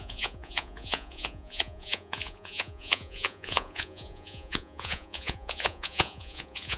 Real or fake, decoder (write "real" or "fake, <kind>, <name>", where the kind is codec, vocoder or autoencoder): fake, vocoder, Vocos